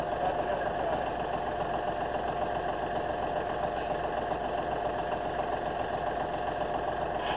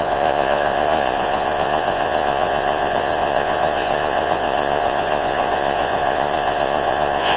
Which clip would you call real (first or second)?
first